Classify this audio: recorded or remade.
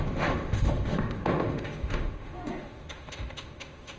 remade